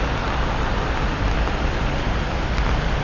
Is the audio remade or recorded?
recorded